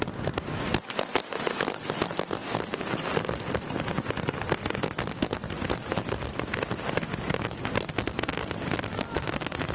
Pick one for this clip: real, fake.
real